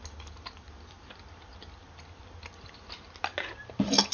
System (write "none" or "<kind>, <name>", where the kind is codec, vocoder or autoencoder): none